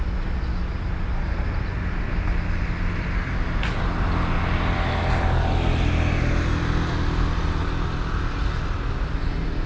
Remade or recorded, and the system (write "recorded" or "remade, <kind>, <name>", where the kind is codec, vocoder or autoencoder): recorded